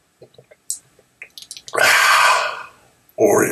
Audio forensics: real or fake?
real